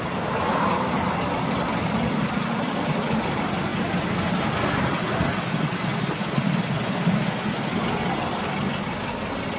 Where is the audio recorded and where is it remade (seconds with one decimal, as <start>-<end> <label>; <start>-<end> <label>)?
0.0-9.6 recorded